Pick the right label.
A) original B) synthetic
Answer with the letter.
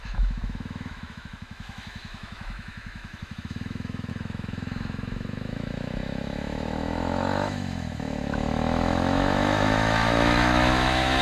B